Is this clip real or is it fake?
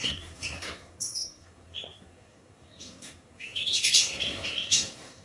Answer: fake